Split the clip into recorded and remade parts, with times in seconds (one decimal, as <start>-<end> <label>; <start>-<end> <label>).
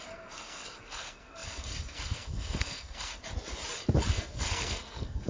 0.0-3.2 remade; 3.2-4.1 recorded; 4.1-5.3 remade